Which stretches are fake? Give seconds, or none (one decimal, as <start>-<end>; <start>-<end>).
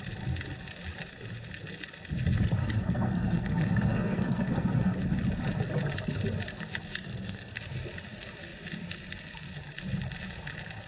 2.6-5.0; 7.0-7.6